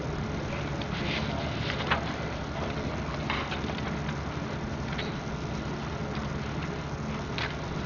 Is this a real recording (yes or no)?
yes